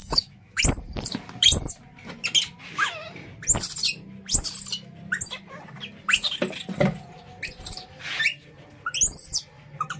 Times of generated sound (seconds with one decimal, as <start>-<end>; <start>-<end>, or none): 0.0-0.6